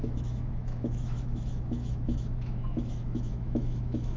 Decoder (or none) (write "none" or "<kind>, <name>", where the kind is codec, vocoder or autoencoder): autoencoder, DAC-VAE